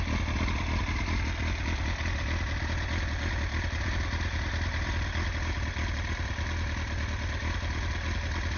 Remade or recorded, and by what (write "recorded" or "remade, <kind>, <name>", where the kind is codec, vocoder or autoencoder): recorded